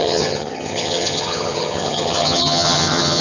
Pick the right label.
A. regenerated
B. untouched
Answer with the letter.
A